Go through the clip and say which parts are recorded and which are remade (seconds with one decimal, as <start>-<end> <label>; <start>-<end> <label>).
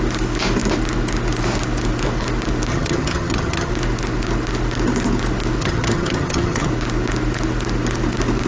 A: 0.0-2.7 recorded; 2.7-3.7 remade; 3.7-5.6 recorded; 5.6-6.7 remade; 6.7-8.5 recorded